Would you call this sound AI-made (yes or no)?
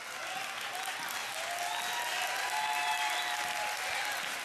no